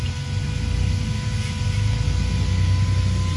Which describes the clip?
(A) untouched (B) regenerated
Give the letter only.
A